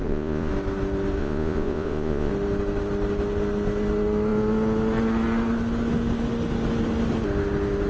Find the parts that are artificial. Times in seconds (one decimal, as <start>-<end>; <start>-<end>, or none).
0.0-0.5; 1.2-2.3